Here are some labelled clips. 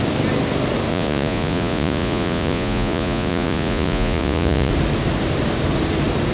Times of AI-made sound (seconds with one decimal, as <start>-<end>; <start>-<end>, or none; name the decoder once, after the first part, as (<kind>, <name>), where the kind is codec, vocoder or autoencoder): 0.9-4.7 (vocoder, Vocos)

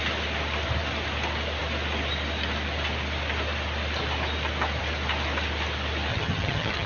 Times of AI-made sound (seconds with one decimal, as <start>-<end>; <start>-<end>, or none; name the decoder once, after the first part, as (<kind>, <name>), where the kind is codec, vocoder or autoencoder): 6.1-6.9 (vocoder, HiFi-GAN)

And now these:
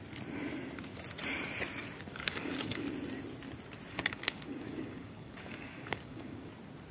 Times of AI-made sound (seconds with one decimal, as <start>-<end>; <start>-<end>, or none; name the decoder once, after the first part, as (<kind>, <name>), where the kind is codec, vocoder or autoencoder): 2.1-2.8 (codec, DAC); 3.9-6.5